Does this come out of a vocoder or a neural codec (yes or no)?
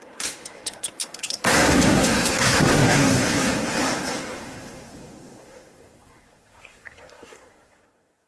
yes